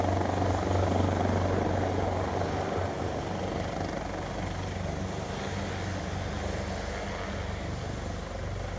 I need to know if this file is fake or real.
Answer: real